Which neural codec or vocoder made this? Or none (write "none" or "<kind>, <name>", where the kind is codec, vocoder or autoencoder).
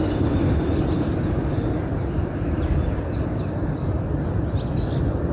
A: none